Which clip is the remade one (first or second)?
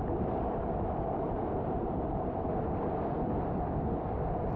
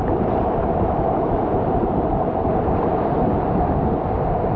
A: second